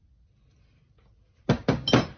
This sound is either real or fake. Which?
real